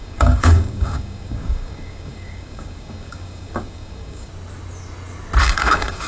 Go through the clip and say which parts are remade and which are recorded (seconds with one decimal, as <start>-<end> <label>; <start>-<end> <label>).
0.0-4.3 remade; 4.3-5.4 recorded; 5.4-6.1 remade